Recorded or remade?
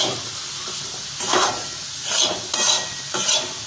recorded